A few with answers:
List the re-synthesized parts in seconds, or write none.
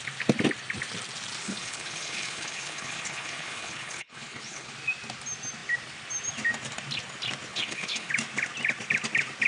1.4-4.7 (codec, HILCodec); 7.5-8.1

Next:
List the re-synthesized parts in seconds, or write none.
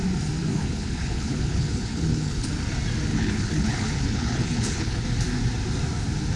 0.5-2.5 (codec, HILCodec); 3.1-5.0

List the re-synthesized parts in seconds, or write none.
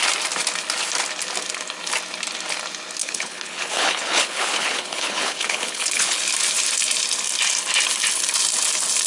3.0-6.2 (codec, HILCodec)